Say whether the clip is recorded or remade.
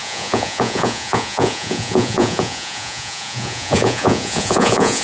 remade